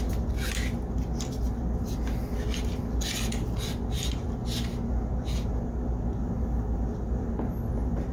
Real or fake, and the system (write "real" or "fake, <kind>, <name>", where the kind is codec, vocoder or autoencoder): real